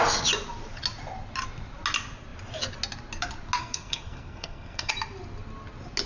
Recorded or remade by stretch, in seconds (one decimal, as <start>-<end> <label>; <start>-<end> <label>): 0.0-3.6 recorded; 3.6-4.9 remade; 4.9-6.1 recorded